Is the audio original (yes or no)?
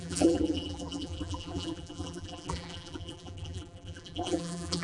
no